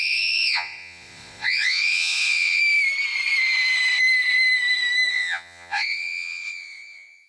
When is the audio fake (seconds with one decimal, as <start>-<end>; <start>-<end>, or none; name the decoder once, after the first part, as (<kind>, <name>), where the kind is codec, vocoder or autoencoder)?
0.0-2.6 (vocoder, Vocos); 5.1-7.3